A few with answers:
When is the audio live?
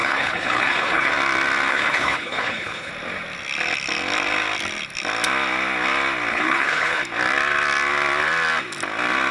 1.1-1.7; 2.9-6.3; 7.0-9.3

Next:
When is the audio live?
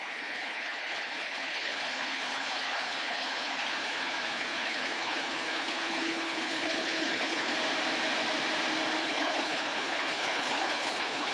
7.5-9.0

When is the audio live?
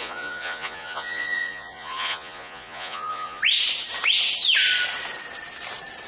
3.4-6.1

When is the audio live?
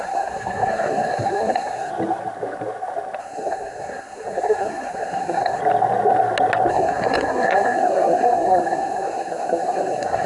1.9-3.2; 5.6-6.7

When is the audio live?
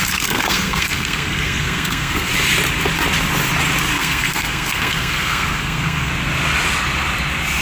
2.3-3.8; 6.1-7.6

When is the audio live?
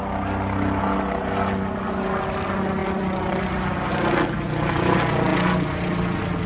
0.0-6.5